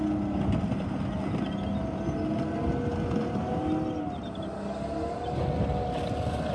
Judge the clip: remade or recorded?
recorded